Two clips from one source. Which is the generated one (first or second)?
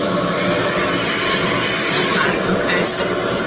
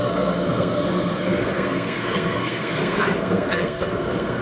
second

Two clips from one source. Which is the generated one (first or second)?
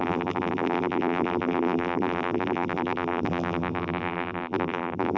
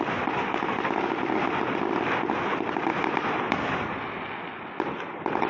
first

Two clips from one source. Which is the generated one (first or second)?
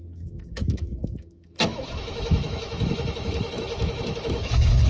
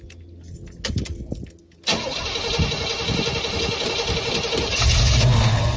first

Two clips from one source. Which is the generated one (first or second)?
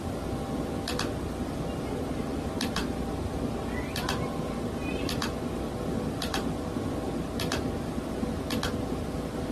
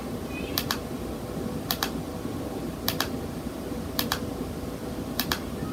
second